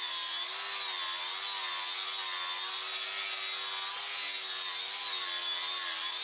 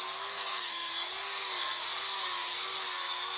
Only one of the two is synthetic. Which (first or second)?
second